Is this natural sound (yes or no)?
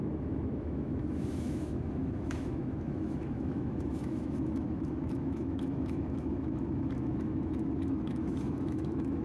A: no